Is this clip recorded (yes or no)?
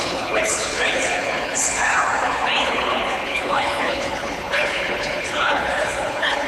no